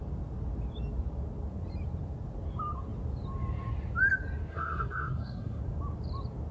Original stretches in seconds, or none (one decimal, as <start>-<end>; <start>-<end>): 0.0-4.5; 5.6-6.5